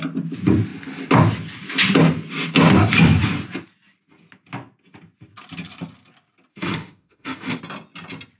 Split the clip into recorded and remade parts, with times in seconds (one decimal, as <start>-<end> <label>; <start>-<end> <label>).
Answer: 0.0-6.5 recorded; 6.5-7.6 remade; 7.6-8.4 recorded